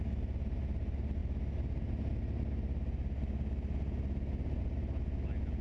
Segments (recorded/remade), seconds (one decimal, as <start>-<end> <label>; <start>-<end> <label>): 0.0-5.6 recorded